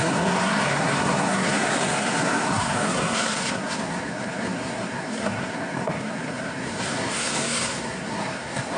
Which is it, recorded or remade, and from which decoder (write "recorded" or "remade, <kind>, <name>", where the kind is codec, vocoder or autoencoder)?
remade, codec, SNAC